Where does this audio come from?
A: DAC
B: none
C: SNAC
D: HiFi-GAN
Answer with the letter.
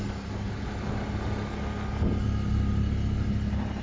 B